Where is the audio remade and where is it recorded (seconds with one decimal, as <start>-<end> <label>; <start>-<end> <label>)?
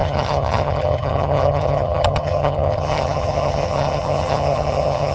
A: 0.0-5.1 remade